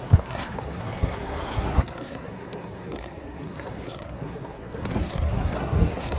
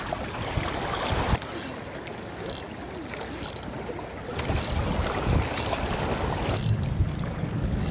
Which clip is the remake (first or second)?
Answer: first